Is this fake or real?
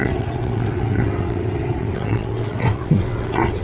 fake